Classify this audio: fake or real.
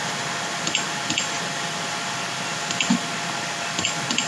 real